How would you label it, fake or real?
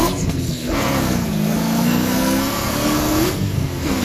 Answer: fake